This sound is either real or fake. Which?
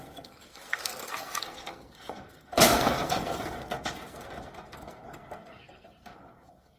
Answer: fake